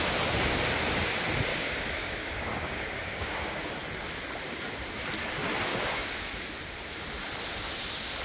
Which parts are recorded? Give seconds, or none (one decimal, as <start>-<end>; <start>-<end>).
0.0-1.5; 3.7-5.7; 6.3-8.2